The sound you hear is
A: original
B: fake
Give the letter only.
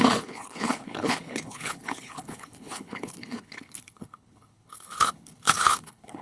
B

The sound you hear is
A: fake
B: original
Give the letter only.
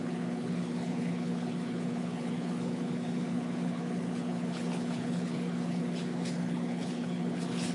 A